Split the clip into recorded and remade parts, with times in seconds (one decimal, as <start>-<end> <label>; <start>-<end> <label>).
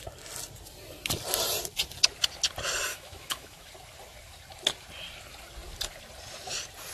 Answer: 0.0-2.9 recorded; 2.9-3.7 remade; 3.7-6.9 recorded